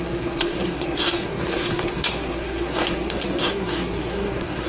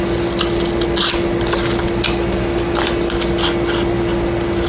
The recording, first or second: second